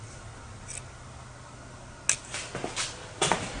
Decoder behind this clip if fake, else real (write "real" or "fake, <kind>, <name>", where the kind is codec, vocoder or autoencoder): real